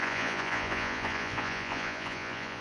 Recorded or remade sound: remade